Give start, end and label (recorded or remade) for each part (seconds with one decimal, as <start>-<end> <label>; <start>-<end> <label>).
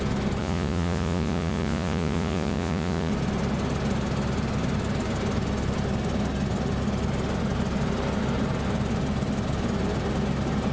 0.0-0.4 recorded; 0.4-3.1 remade; 3.1-10.7 recorded